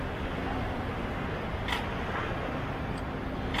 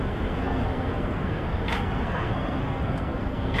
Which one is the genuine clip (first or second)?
first